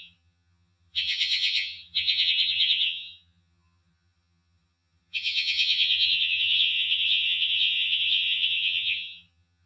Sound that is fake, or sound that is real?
fake